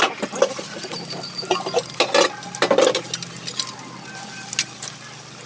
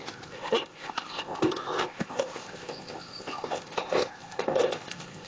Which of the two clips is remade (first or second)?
second